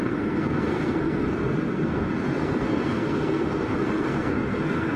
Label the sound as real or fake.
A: fake